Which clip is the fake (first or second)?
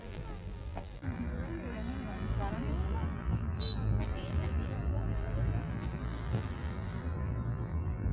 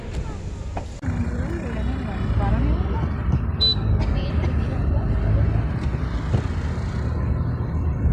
first